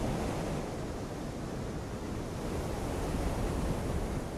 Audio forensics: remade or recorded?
recorded